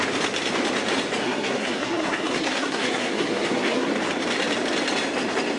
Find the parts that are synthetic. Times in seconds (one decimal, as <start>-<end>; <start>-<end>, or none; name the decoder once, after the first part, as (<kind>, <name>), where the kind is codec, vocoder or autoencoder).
1.2-3.9 (codec, SNAC)